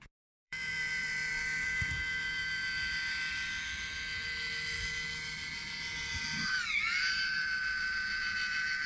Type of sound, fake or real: fake